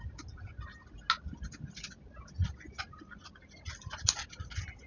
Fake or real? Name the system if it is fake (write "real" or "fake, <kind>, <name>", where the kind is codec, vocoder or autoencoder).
real